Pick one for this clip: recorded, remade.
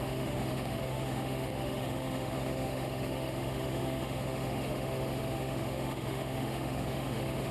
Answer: remade